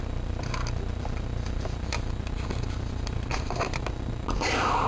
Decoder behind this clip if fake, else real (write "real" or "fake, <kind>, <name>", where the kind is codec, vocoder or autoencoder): real